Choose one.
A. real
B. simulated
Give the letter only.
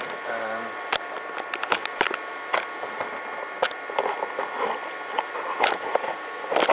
A